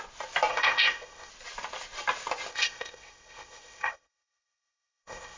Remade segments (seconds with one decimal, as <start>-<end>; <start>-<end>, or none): 0.5-1.3; 2.5-5.4

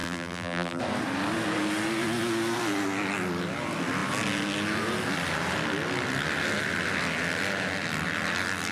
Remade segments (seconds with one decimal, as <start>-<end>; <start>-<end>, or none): 0.0-0.8

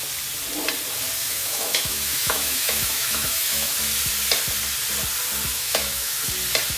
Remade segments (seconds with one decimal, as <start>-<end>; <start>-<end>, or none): 1.2-3.7; 5.5-6.2

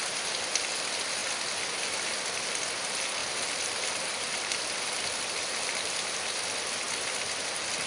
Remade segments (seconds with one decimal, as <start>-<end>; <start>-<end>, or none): 3.2-6.4

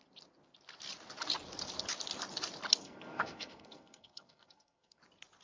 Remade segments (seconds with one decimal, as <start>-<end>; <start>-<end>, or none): 2.8-5.0

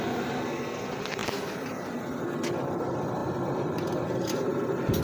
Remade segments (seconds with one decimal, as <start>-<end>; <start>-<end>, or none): 3.2-4.4